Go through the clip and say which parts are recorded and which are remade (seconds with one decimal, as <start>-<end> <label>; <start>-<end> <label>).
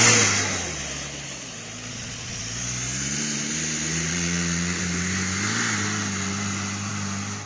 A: 0.0-1.9 recorded; 1.9-2.4 remade; 2.4-4.1 recorded; 4.1-4.8 remade; 4.8-7.5 recorded